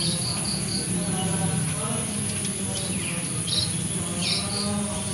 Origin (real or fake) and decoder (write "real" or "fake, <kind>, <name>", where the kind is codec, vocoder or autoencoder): real